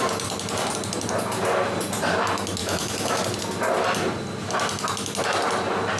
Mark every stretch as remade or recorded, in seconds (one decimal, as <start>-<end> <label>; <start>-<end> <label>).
0.0-2.6 recorded; 2.6-3.2 remade; 3.2-6.0 recorded